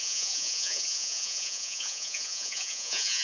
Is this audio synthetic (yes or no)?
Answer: yes